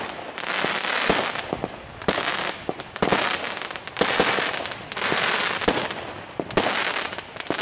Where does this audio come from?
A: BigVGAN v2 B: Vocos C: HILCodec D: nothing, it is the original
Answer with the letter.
D